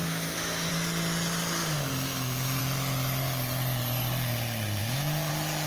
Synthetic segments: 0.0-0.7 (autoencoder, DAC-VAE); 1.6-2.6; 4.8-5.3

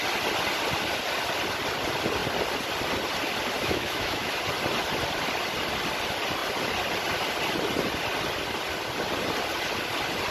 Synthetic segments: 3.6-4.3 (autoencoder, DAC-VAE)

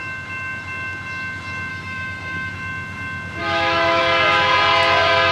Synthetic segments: 1.7-2.5 (autoencoder, DAC-VAE); 3.4-4.0

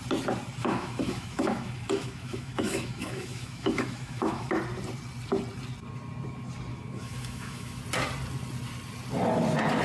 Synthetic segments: 0.6-4.5 (autoencoder, DAC-VAE); 6.7-7.8

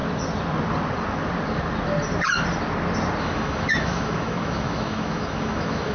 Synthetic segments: 3.2-5.9 (autoencoder, DAC-VAE)